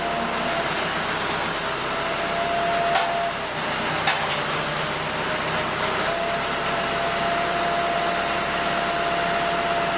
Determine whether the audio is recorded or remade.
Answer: recorded